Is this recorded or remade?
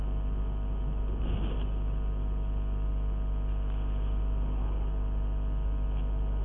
recorded